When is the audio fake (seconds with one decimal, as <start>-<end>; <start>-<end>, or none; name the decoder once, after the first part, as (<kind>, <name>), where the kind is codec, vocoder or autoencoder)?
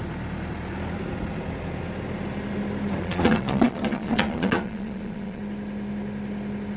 3.0-5.4 (vocoder, Vocos)